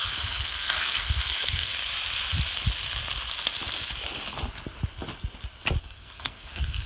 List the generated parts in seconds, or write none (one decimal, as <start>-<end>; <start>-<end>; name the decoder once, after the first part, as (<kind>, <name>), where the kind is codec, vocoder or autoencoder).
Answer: 0.0-1.7 (codec, SNAC); 5.8-6.9